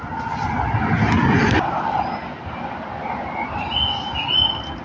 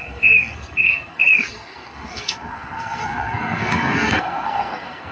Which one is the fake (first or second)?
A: second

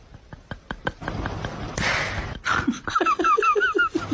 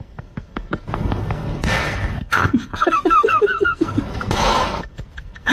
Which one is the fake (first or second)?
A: second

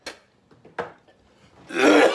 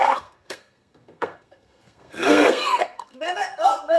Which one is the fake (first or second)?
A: second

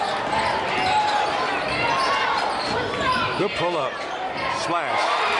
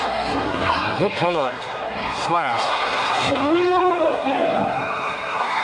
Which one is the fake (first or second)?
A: second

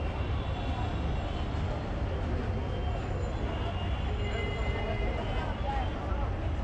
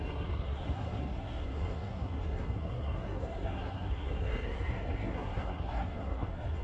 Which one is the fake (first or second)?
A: second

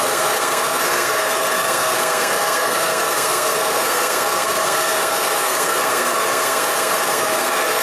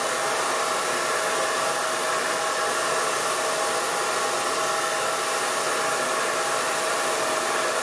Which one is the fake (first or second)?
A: first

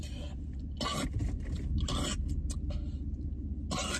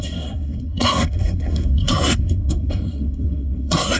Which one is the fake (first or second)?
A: second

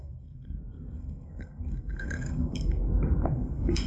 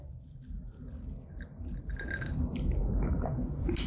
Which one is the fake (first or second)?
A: first